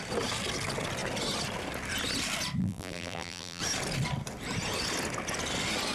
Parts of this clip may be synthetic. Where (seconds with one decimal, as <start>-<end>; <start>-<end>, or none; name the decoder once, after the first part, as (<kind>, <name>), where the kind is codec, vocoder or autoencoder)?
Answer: 2.6-3.6 (vocoder, BigVGAN v2)